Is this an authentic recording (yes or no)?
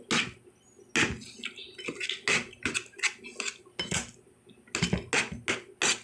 yes